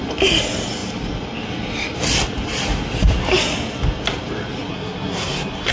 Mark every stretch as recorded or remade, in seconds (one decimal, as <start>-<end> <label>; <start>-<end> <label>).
0.0-4.7 recorded; 4.7-5.7 remade